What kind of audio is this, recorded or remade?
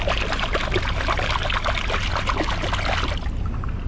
recorded